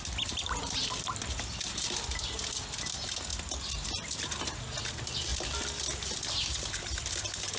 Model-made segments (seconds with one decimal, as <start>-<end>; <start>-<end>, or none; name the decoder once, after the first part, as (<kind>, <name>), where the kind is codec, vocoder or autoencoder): none